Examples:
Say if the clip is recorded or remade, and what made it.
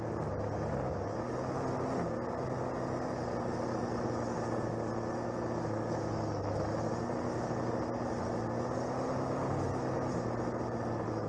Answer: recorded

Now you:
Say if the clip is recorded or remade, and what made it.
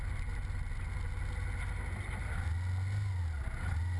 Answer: recorded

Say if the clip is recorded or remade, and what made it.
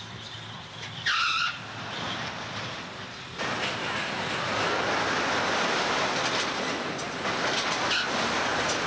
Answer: recorded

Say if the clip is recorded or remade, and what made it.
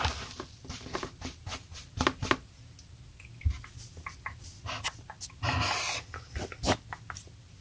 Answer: recorded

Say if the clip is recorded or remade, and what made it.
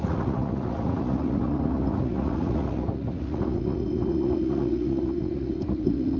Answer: remade, vocoder, Vocos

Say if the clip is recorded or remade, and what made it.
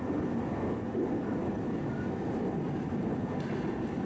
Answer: recorded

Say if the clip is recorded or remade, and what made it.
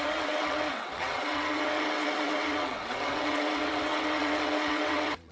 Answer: remade, vocoder, WaveNeXt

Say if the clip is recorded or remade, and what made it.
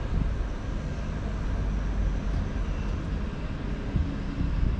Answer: recorded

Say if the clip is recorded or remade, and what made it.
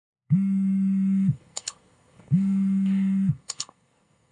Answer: remade, codec, SNAC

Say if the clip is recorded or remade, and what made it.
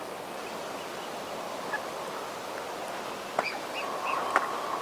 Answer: recorded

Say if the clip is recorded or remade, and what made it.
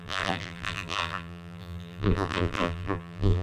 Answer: remade, vocoder, BigVGAN v2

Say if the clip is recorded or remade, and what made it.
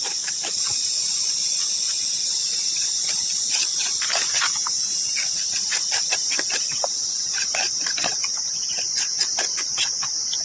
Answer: recorded